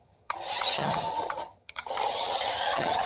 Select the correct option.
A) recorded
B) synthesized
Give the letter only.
B